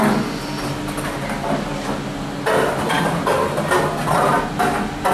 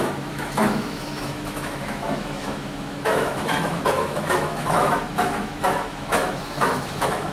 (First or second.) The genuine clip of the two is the first